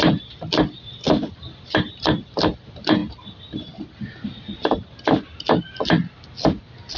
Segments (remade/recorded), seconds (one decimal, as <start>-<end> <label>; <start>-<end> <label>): 0.0-7.0 recorded